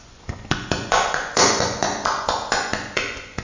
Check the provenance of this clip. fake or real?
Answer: fake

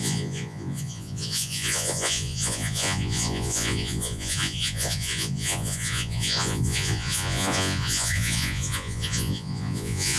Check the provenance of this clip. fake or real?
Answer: fake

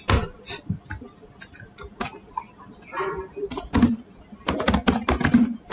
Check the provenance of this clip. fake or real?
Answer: real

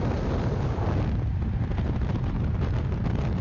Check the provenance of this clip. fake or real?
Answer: real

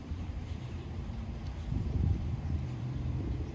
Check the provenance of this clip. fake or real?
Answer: fake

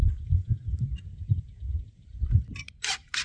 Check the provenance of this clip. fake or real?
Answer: real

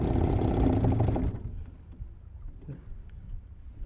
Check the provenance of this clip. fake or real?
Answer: real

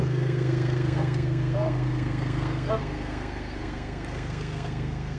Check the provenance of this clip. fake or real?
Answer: fake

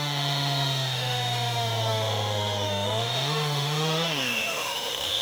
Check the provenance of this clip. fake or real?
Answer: fake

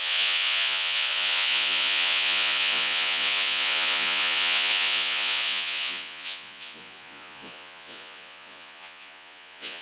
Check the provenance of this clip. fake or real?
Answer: fake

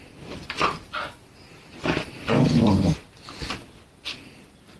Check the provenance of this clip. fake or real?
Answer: real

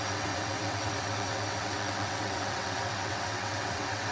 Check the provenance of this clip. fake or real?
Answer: fake